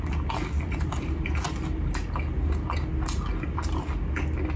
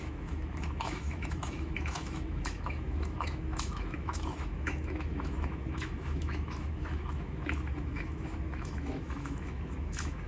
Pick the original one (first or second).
first